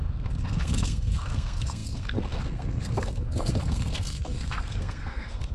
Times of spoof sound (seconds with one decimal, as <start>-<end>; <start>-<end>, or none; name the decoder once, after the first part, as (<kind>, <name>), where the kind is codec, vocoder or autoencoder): 0.0-5.5 (codec, SNAC)